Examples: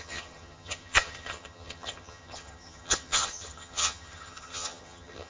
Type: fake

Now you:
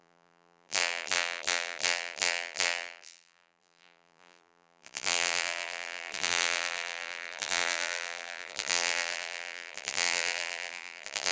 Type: fake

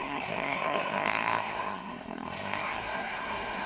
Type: fake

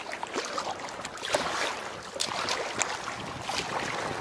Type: real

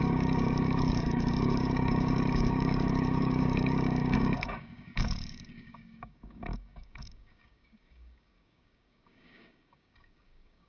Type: fake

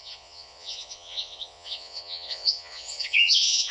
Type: fake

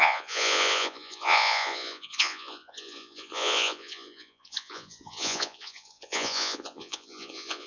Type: fake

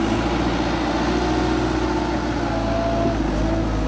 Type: real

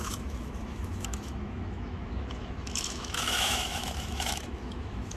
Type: fake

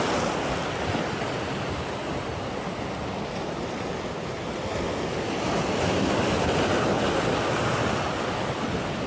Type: real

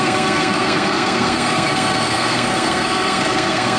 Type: fake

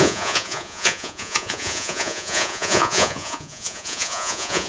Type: fake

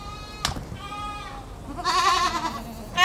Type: real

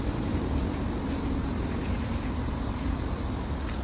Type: real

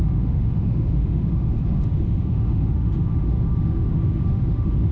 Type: fake